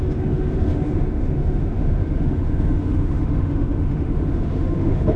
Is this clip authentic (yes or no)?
no